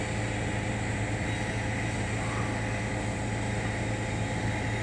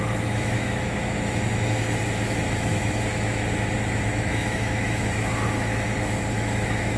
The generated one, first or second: second